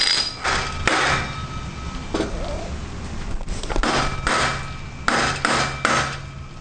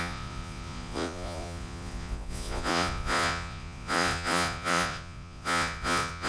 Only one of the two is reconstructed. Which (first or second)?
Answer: second